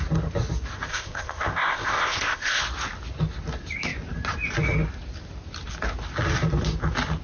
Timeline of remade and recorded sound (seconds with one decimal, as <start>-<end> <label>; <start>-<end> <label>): 0.0-0.9 recorded; 0.9-2.6 remade; 2.6-7.2 recorded